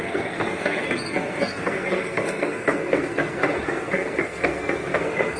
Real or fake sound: fake